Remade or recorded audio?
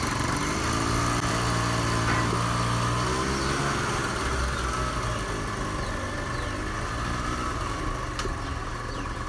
recorded